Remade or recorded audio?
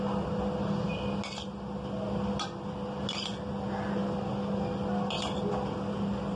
recorded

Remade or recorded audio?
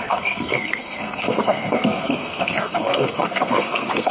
remade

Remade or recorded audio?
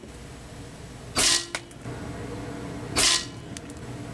recorded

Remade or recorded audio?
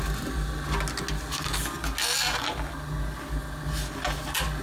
recorded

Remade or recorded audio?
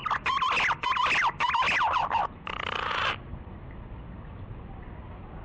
recorded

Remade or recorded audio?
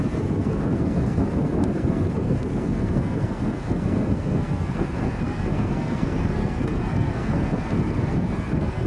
remade